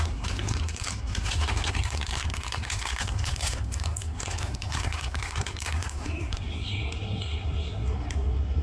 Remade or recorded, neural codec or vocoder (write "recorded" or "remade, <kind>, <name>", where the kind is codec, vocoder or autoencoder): remade, codec, SNAC